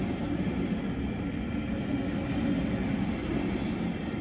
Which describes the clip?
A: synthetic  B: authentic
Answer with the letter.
B